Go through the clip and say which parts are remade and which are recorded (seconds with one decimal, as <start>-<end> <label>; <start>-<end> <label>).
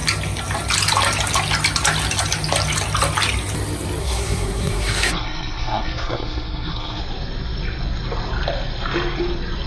0.0-4.0 recorded; 4.0-7.0 remade; 7.0-9.7 recorded